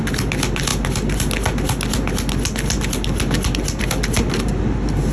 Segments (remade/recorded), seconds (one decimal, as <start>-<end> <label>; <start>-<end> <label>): 0.0-5.1 recorded